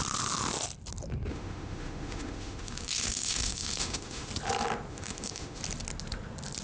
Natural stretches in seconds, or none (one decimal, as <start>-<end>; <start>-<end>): 0.0-1.3; 4.3-4.9; 5.6-6.6